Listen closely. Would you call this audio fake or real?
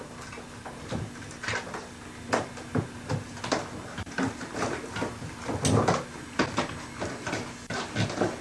real